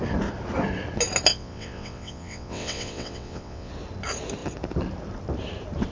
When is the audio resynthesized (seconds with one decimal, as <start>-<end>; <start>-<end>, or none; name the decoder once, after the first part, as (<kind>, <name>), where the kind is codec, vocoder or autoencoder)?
1.3-3.7 (vocoder, WaveNeXt)